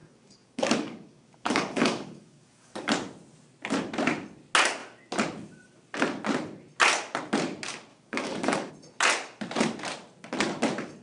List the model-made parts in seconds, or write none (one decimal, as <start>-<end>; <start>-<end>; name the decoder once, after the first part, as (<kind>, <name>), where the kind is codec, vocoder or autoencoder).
0.0-2.9 (codec, DAC); 7.9-8.7